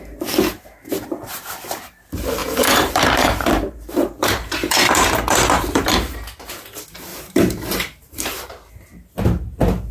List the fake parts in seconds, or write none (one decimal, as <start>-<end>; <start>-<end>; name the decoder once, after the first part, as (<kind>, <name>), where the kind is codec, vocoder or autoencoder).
2.4-5.9 (vocoder, BigVGAN v2); 7.1-8.7